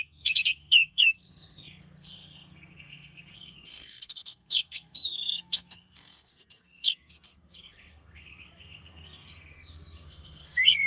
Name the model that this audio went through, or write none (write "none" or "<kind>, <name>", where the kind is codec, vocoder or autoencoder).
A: codec, SNAC